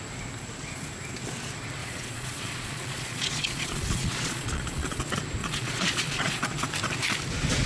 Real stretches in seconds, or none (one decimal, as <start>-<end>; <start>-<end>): 0.0-1.8; 5.0-5.4; 6.4-7.7